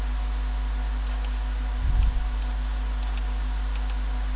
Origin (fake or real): real